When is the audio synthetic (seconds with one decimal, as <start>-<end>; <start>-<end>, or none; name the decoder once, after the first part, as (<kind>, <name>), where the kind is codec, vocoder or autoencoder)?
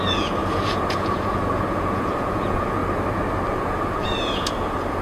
0.0-2.8 (vocoder, Vocos); 3.5-5.0